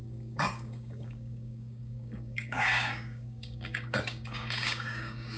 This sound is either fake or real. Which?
fake